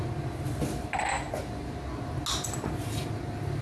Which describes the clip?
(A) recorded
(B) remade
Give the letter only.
A